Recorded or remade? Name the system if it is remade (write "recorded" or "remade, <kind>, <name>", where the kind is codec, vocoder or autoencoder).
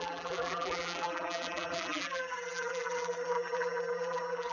remade, vocoder, BigVGAN v2